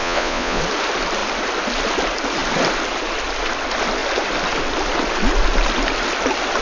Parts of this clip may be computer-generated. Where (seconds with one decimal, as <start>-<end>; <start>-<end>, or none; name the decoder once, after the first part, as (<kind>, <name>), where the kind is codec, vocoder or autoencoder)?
0.0-0.6 (vocoder, Vocos)